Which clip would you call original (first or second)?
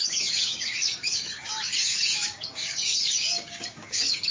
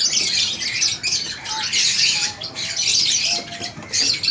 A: second